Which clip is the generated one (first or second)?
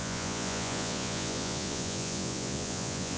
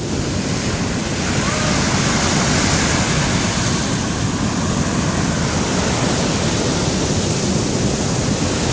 first